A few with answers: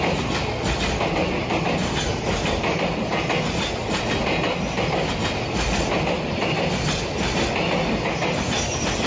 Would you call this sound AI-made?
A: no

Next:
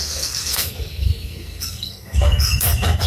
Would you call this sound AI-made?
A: yes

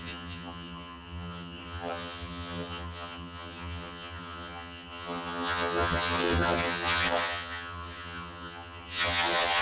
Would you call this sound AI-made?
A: yes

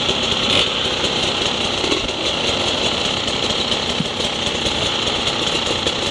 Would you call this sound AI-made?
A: no